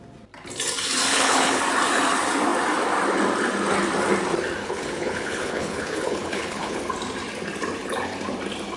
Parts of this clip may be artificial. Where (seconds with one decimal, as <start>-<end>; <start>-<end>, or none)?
1.1-1.6; 4.6-6.8